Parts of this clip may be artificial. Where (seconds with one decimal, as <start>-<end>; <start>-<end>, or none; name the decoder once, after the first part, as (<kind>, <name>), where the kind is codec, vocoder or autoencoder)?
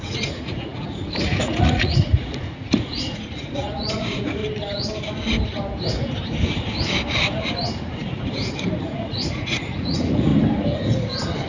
0.0-4.4 (vocoder, Vocos); 8.8-10.3